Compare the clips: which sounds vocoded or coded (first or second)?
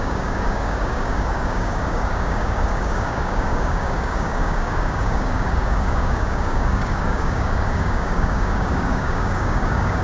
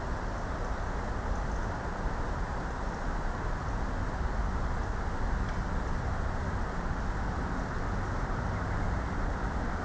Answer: first